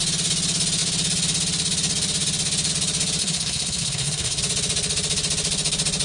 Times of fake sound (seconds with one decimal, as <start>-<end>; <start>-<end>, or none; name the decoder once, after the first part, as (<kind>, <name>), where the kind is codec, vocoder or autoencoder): 3.2-4.4 (codec, SNAC)